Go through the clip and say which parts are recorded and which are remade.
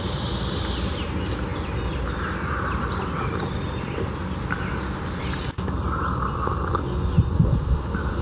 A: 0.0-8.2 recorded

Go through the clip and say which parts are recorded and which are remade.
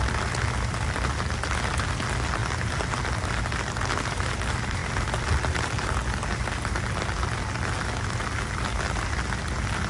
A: 0.0-9.9 recorded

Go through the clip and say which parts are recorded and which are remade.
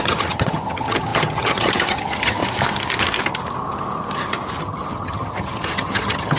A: 0.0-2.4 remade; 2.4-4.6 recorded; 4.6-6.4 remade